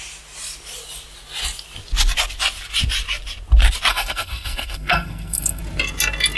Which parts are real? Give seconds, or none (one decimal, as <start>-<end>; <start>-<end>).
0.0-3.9; 5.6-6.4